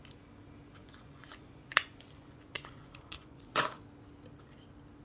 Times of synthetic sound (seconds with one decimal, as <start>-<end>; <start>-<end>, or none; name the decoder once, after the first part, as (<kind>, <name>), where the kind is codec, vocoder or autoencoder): 0.8-3.8 (vocoder, Vocos)